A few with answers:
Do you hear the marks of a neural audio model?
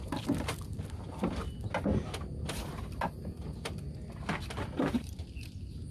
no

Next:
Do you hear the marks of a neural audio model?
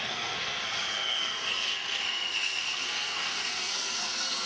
yes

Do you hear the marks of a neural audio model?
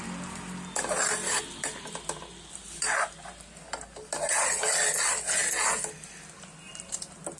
no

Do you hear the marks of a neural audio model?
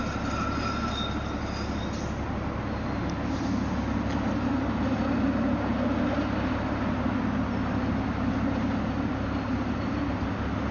no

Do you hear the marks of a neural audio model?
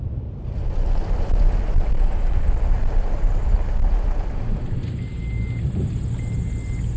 no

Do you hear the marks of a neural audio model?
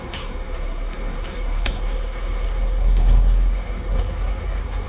yes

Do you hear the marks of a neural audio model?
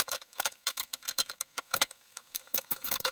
yes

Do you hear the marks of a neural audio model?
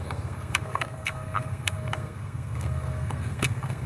yes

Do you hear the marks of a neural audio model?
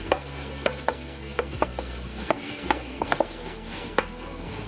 yes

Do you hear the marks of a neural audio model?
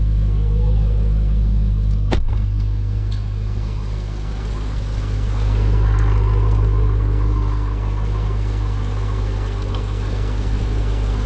yes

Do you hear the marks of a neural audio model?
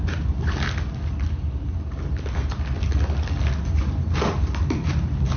no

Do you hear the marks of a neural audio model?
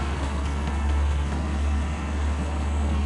yes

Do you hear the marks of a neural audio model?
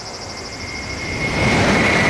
no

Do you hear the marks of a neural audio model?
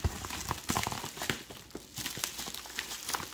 no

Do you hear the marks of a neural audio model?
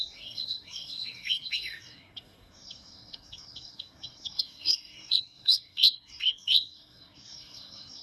yes